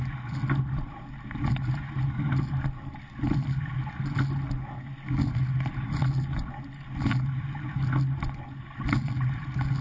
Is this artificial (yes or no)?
no